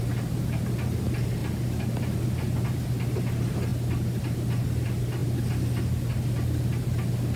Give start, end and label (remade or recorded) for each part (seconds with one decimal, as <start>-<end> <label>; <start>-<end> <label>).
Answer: 0.0-7.4 recorded

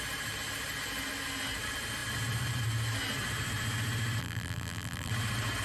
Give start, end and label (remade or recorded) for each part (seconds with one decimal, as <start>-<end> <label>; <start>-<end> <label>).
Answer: 0.0-4.2 recorded; 4.2-5.1 remade; 5.1-5.6 recorded

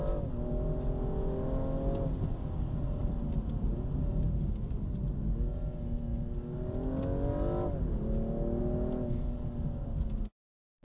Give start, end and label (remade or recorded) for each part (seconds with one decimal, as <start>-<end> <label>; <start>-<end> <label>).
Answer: 0.0-3.0 recorded; 3.0-4.0 remade; 4.0-10.8 recorded

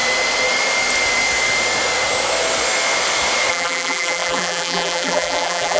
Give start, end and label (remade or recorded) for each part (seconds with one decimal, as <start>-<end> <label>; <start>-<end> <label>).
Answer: 0.0-3.5 recorded; 3.5-5.8 remade

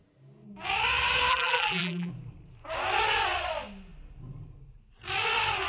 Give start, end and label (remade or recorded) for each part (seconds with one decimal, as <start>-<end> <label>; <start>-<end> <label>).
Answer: 0.0-1.3 recorded; 1.3-2.1 remade; 2.1-5.7 recorded